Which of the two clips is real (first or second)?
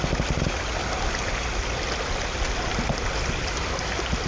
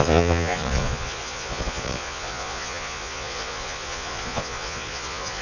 first